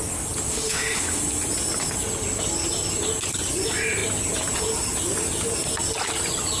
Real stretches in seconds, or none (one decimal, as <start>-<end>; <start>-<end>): 0.0-0.5; 1.2-6.6

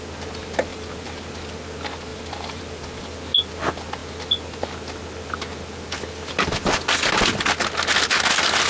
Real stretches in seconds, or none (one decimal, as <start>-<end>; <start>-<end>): 0.0-0.7; 1.3-2.1; 2.6-8.7

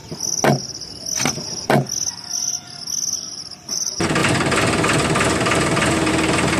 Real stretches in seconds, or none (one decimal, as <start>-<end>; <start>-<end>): 0.0-3.7; 4.2-6.1

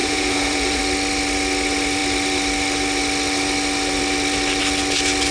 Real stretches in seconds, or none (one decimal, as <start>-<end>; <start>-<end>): 0.8-5.3

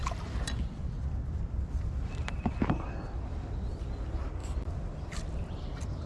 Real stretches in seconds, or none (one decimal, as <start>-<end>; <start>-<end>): 0.0-6.1

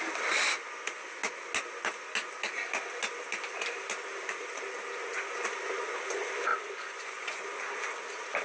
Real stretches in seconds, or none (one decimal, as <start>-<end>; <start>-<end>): 0.0-6.5; 7.4-8.4

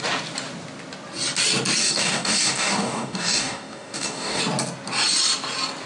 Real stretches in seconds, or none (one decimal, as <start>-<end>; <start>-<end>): 0.0-1.8; 4.4-5.9

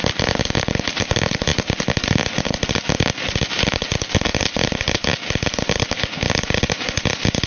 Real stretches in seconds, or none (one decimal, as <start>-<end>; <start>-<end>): 0.0-7.5